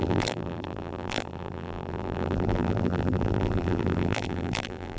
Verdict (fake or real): fake